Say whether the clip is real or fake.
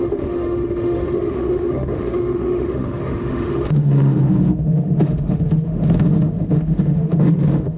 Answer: fake